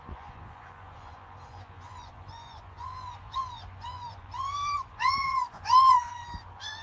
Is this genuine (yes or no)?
no